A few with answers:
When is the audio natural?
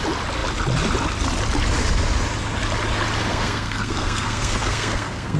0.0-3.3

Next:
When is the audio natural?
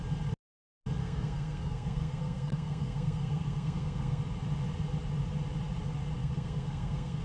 0.0-1.0; 4.2-6.2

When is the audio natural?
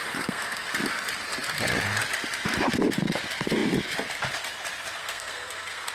0.7-5.0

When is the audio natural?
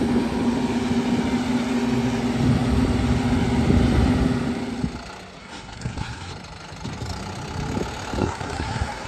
0.0-5.4; 6.3-8.2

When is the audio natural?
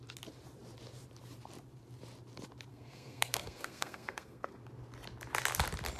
0.0-2.7; 4.5-6.0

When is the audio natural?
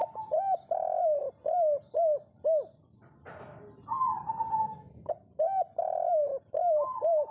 0.0-4.6; 5.1-7.3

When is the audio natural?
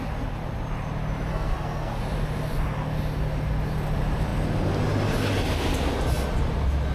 0.0-1.3; 2.0-6.9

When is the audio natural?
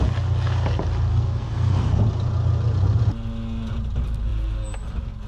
0.0-1.1; 2.0-5.3